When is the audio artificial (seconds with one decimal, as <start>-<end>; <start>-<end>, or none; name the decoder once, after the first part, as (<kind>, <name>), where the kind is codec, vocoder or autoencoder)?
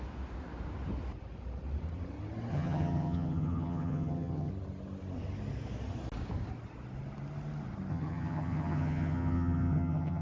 2.5-4.5 (vocoder, HiFi-GAN); 7.9-10.2